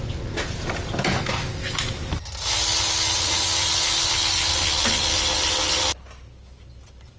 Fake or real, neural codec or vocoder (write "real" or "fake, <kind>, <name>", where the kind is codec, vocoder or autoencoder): real